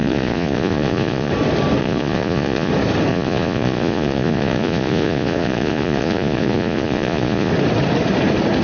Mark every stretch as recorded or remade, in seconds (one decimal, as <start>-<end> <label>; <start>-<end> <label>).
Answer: 0.0-1.3 remade; 1.3-1.8 recorded; 1.8-2.7 remade; 2.7-3.1 recorded; 3.1-7.5 remade; 7.5-8.6 recorded